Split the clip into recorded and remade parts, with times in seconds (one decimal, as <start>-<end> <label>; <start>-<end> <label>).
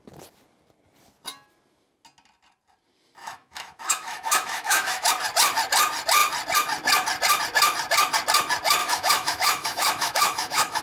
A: 0.0-3.2 recorded; 3.2-5.1 remade; 5.1-8.8 recorded; 8.8-10.8 remade